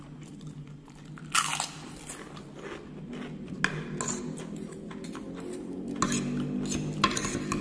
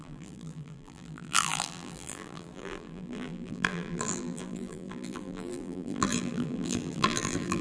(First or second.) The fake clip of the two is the second